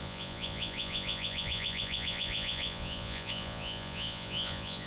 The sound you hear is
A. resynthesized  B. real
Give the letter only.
A